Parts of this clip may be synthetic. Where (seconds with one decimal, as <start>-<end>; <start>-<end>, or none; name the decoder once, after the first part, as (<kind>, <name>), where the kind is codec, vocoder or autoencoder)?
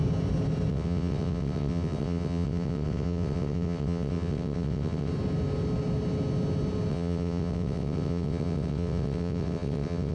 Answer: 0.7-5.1 (vocoder, WaveNeXt); 6.9-10.1